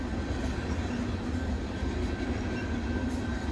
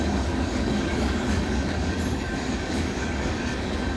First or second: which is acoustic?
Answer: first